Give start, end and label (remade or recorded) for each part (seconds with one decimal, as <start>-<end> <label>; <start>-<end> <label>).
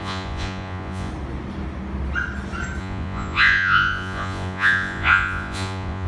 0.0-1.1 remade; 1.1-2.8 recorded; 2.8-6.1 remade